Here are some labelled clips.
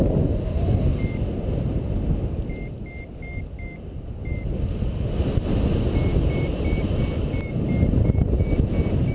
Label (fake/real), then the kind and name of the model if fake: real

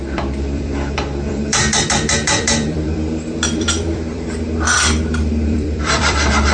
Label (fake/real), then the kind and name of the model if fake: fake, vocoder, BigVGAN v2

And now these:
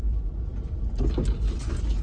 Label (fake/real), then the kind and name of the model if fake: real